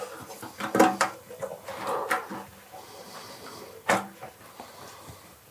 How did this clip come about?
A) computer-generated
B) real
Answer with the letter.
B